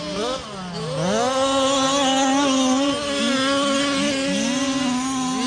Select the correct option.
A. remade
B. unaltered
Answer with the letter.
B